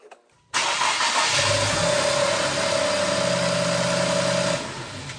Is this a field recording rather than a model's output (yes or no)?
yes